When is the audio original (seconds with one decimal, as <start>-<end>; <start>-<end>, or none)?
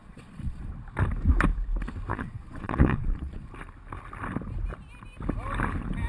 0.7-2.1; 3.5-6.1